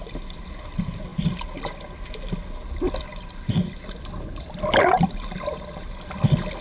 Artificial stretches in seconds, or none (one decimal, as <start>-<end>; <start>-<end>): none